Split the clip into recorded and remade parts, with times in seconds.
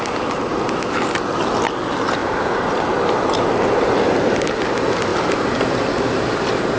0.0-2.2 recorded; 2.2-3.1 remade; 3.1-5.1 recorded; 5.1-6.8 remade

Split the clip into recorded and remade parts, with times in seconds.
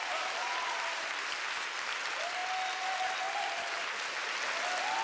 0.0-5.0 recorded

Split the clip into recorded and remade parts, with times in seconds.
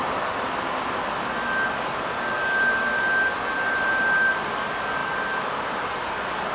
0.0-6.5 recorded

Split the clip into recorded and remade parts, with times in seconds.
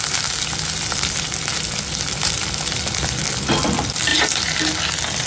0.0-5.3 recorded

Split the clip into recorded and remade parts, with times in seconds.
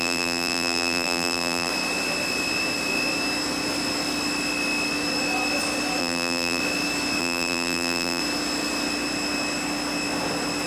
0.0-1.7 remade; 1.7-6.0 recorded; 6.0-6.6 remade; 6.6-7.2 recorded; 7.2-8.2 remade; 8.2-10.7 recorded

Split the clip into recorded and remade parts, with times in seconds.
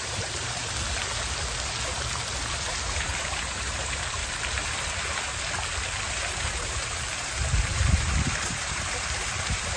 0.0-0.6 remade; 0.6-2.8 recorded; 2.8-4.2 remade; 4.2-6.1 recorded; 6.1-9.8 remade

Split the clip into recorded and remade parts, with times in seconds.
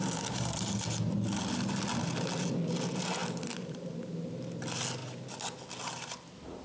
0.0-3.2 recorded; 3.2-3.9 remade; 3.9-6.6 recorded